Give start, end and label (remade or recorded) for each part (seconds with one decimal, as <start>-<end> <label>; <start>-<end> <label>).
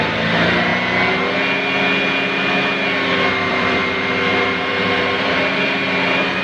0.0-0.7 remade; 0.7-3.5 recorded; 3.5-6.4 remade